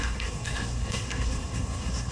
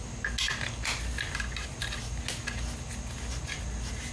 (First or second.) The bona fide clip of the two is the second